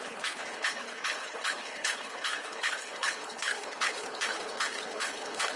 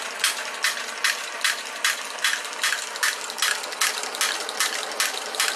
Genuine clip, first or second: second